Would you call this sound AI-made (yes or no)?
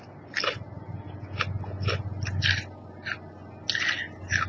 no